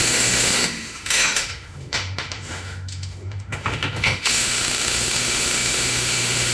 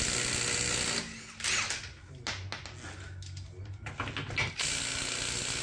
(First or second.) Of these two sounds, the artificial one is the first